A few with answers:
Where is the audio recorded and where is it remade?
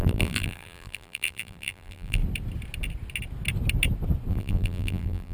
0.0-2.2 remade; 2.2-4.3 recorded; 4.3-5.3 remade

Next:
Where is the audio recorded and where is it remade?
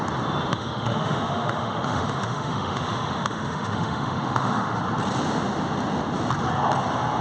0.0-0.5 recorded; 0.5-4.8 remade; 4.8-7.2 recorded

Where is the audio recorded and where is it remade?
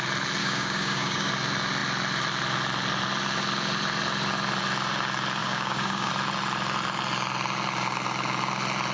0.0-0.4 recorded; 0.4-1.3 remade; 1.3-5.4 recorded; 5.4-6.1 remade; 6.1-8.9 recorded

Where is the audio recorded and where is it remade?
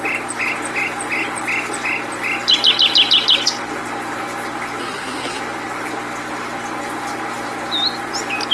0.0-4.8 recorded; 4.8-5.4 remade; 5.4-8.5 recorded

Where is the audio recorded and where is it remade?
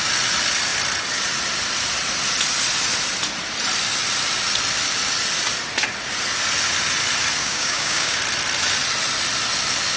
0.0-7.4 recorded; 7.4-8.2 remade; 8.2-10.0 recorded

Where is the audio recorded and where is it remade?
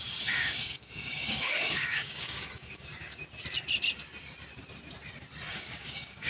0.0-3.2 remade; 3.2-5.5 recorded; 5.5-6.3 remade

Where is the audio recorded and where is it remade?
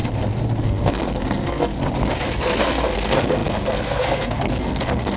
0.0-0.6 recorded; 0.6-1.7 remade; 1.7-2.3 recorded; 2.3-5.2 remade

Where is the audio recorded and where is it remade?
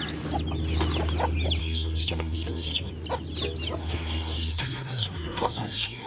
0.0-1.6 recorded; 1.6-2.9 remade; 2.9-3.8 recorded; 3.8-6.1 remade